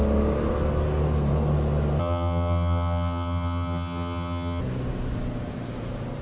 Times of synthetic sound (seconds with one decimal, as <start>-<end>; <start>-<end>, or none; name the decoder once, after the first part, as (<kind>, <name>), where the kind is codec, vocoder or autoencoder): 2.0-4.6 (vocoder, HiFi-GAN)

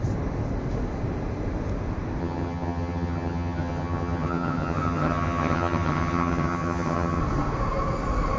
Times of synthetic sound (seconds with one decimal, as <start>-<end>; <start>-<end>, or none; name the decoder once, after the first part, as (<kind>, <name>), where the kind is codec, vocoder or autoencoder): 2.2-7.2 (vocoder, HiFi-GAN)

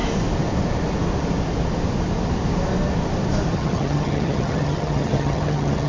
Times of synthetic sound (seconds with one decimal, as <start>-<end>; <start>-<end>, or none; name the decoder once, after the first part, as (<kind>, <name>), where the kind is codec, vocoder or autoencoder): 3.5-5.9 (vocoder, HiFi-GAN)

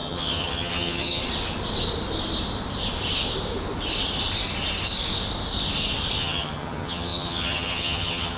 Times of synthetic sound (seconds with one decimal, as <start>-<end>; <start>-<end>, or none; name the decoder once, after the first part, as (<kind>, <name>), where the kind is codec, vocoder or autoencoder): 0.0-1.2 (vocoder, HiFi-GAN); 6.2-8.4